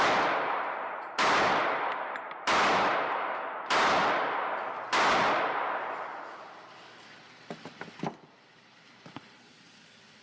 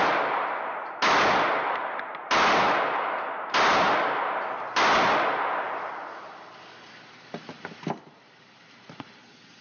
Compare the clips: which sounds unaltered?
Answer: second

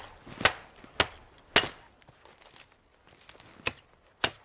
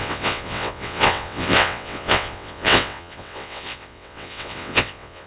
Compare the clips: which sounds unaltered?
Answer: first